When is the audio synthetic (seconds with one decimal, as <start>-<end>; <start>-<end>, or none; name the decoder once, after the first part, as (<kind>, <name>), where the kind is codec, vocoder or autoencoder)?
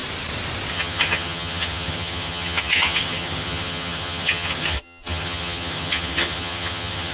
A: 0.7-7.1 (vocoder, HiFi-GAN)